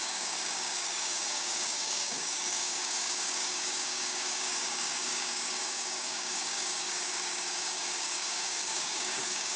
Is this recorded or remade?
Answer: remade